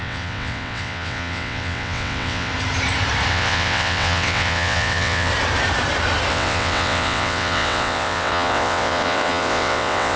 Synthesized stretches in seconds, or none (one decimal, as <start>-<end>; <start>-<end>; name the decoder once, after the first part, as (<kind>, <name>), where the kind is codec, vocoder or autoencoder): 0.0-2.5 (vocoder, WaveNeXt); 3.3-5.3; 6.3-10.2